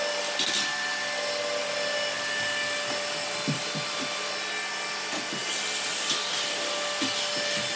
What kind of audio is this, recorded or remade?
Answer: recorded